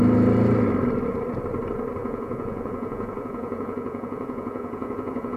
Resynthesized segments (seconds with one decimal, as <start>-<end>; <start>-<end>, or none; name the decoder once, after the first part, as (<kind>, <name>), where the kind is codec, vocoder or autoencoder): 2.0-5.4 (vocoder, Vocos)